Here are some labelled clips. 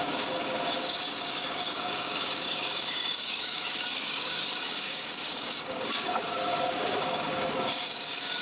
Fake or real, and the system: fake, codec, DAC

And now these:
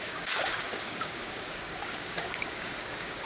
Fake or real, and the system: fake, codec, DAC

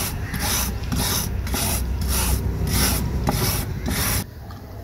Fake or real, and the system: real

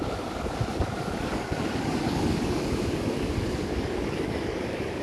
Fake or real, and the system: fake, codec, DAC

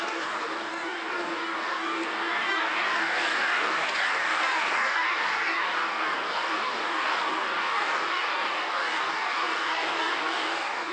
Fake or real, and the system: fake, codec, DAC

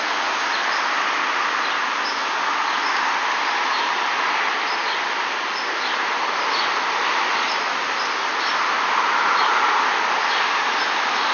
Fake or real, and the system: real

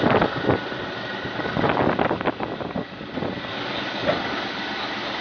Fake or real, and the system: real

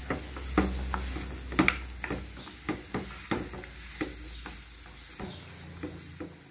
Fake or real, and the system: real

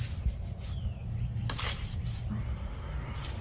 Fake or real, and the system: real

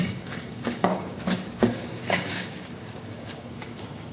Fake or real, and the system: fake, codec, DAC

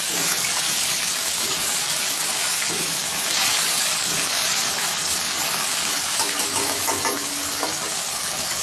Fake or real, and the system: fake, codec, DAC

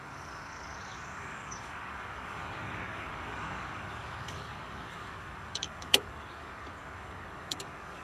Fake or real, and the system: fake, codec, DAC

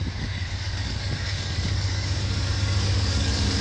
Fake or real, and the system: fake, codec, DAC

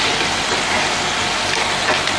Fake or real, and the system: real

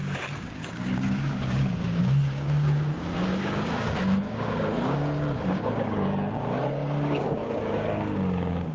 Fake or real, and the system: fake, codec, DAC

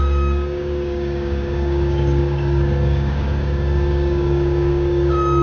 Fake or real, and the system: fake, codec, DAC